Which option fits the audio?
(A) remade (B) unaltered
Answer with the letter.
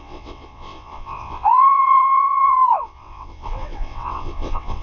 A